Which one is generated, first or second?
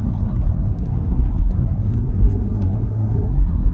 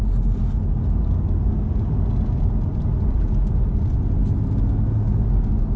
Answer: first